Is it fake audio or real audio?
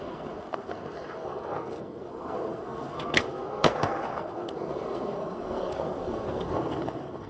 fake